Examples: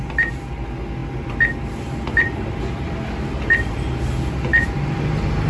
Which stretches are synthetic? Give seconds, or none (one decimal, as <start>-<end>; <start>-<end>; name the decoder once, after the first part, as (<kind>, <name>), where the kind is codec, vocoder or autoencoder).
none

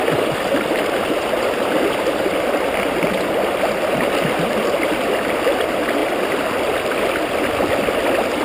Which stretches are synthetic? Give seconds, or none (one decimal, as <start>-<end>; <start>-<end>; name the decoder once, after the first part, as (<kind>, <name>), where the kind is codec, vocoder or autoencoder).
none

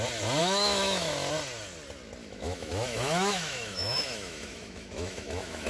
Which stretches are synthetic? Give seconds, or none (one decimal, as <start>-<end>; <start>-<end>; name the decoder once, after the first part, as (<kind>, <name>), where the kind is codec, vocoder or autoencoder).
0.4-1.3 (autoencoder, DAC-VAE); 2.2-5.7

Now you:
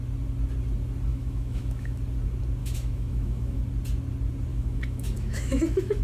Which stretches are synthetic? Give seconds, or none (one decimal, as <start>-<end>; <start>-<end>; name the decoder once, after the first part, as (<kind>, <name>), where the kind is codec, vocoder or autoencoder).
1.1-2.0 (autoencoder, DAC-VAE); 2.6-3.6; 4.5-6.0

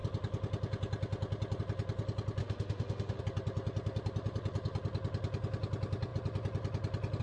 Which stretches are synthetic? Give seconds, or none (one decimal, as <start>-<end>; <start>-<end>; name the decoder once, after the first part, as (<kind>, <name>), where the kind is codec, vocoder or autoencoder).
2.4-3.2 (autoencoder, DAC-VAE)

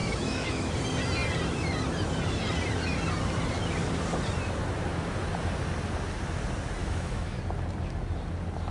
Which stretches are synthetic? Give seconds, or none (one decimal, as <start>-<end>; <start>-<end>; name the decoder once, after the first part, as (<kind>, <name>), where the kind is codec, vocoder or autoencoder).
0.0-0.7 (autoencoder, DAC-VAE); 6.8-7.4